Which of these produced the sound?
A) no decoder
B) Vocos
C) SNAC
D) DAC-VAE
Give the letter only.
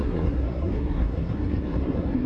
C